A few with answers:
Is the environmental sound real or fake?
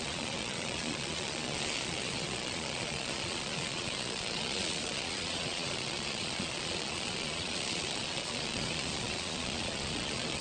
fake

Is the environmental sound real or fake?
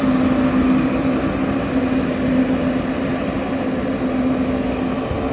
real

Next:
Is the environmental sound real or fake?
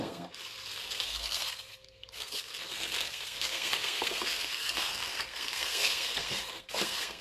fake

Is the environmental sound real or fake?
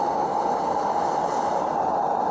real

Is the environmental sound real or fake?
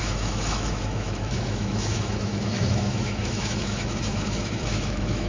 fake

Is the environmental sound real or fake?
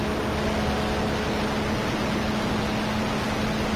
real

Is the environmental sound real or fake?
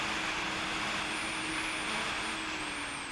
real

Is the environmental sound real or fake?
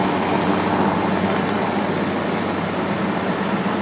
real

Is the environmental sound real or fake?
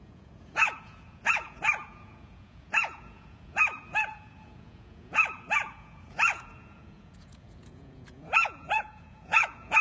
fake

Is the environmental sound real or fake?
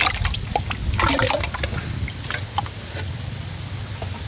real